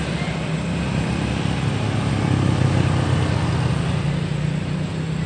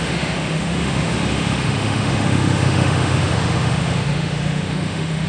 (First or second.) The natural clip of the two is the first